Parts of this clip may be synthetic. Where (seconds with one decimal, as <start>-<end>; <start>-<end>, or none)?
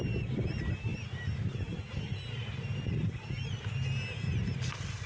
none